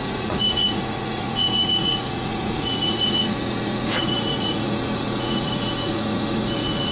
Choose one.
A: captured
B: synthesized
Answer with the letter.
B